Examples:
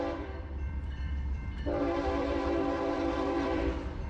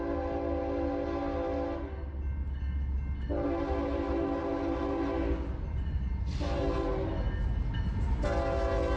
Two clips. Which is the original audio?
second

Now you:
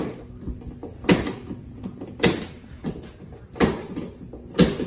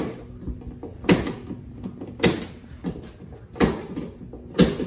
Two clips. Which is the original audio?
second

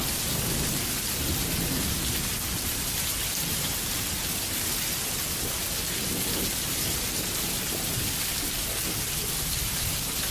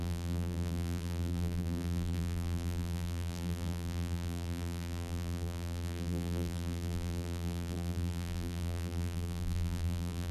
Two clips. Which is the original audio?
first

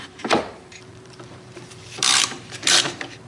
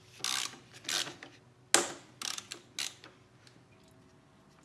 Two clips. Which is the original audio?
second